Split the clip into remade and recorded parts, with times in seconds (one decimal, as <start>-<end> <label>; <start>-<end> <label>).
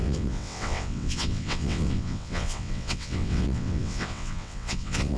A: 0.0-5.2 remade